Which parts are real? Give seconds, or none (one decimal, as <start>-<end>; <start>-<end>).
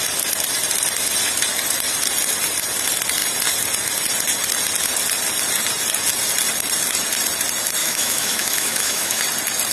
0.0-7.8; 9.2-9.7